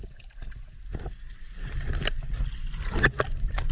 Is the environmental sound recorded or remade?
recorded